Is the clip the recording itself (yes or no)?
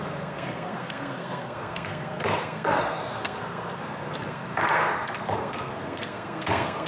no